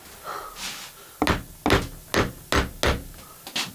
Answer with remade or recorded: recorded